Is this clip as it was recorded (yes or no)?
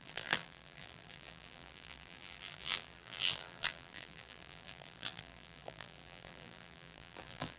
no